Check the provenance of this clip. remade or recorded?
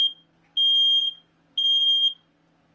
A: recorded